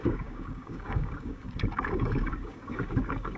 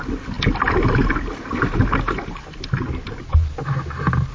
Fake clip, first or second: first